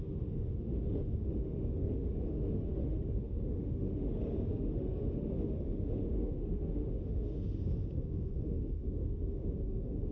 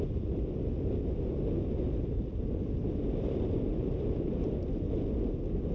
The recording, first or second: second